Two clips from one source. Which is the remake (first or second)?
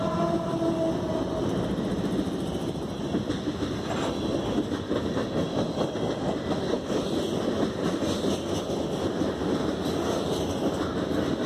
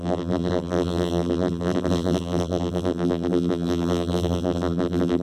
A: second